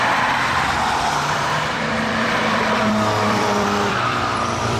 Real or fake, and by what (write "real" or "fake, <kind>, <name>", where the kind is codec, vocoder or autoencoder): fake, vocoder, BigVGAN v2